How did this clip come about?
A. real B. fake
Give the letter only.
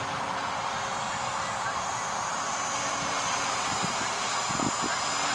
A